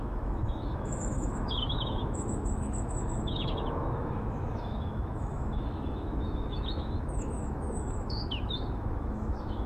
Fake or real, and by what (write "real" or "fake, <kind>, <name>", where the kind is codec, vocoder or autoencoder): fake, autoencoder, DAC-VAE